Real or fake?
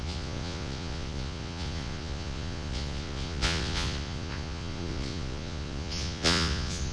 fake